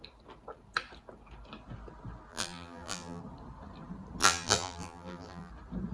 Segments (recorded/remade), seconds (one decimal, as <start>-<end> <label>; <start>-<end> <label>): 0.0-2.3 recorded; 2.3-3.2 remade; 3.2-4.2 recorded; 4.2-5.5 remade; 5.5-5.9 recorded